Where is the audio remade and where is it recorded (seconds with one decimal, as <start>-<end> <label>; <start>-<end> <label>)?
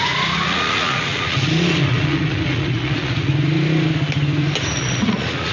0.0-3.3 remade; 3.3-4.7 recorded; 4.7-5.5 remade